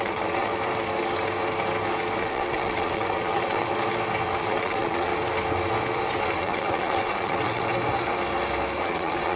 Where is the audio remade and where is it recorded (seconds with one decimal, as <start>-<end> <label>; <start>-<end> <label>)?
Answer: 0.0-0.5 remade; 0.5-2.2 recorded; 2.2-3.7 remade; 3.7-4.4 recorded; 4.4-5.1 remade; 5.1-6.2 recorded; 6.2-7.7 remade; 7.7-8.8 recorded; 8.8-9.4 remade